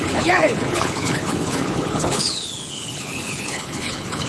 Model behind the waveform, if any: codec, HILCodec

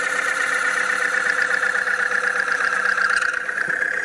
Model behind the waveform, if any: none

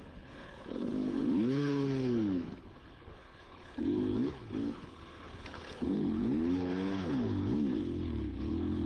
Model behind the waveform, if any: codec, HILCodec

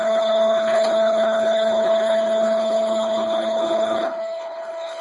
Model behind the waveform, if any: codec, HILCodec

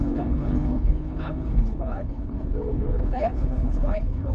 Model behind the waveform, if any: codec, HILCodec